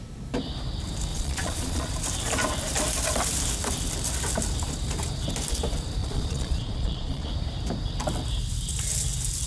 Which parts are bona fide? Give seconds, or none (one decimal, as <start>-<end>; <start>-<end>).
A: 0.0-1.1; 1.9-6.0; 7.3-9.5